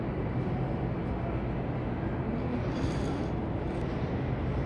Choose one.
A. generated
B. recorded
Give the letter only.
B